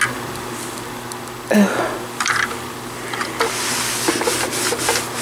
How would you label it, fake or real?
real